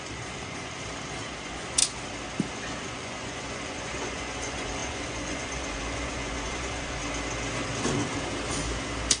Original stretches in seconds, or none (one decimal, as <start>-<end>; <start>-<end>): 0.8-1.4; 1.8-2.5; 7.0-9.2